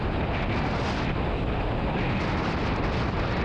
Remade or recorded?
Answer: recorded